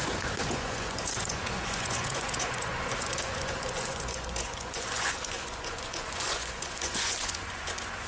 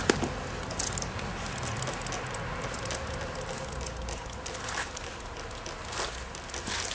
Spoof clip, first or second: first